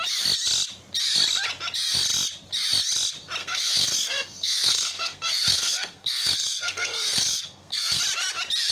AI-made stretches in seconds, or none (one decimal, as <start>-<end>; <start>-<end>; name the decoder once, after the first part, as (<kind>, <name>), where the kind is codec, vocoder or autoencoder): 3.4-8.0 (codec, SNAC)

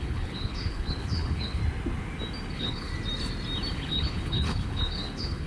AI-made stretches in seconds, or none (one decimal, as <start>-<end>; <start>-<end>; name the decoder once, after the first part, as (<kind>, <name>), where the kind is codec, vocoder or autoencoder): 0.0-1.6 (codec, HILCodec); 2.5-2.9; 3.7-5.5

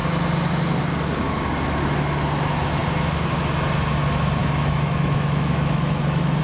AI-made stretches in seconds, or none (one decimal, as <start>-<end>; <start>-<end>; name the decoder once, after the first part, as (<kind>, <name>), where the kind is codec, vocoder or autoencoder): 4.4-6.4 (autoencoder, DAC-VAE)

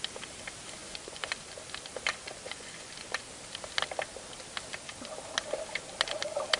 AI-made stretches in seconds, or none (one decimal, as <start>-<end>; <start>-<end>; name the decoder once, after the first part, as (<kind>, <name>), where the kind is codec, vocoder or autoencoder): 0.8-1.3 (vocoder, Vocos); 2.1-3.3

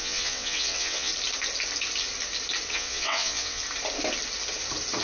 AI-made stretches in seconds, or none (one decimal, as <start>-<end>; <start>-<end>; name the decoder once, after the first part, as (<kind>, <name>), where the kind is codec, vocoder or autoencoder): 0.0-1.1 (vocoder, WaveNeXt); 2.7-3.6

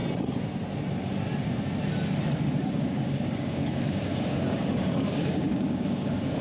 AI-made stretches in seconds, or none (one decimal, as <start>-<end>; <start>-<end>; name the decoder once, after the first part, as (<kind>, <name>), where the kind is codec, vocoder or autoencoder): 2.7-6.4 (codec, DAC)